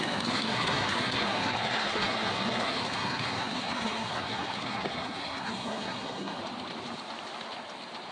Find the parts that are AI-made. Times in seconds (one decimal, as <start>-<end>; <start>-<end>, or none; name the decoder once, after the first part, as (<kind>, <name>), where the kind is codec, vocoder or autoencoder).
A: 0.0-6.4 (codec, SNAC)